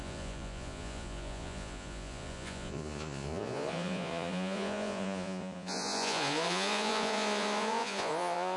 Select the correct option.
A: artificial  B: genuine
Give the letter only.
A